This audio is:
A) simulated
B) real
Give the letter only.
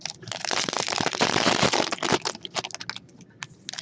B